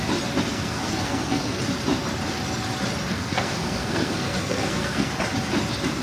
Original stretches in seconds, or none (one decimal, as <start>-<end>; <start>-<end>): 0.0-0.5; 1.6-3.1; 5.1-6.0